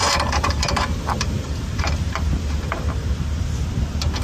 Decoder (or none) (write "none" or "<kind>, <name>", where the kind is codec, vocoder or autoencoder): vocoder, BigVGAN v2